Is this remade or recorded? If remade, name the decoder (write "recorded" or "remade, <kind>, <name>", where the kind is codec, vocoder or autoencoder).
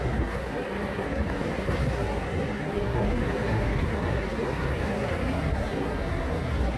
remade, codec, SNAC